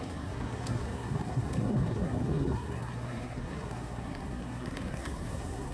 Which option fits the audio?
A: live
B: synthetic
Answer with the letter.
B